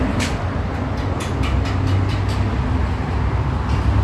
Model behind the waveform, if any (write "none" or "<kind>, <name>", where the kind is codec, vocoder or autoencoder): none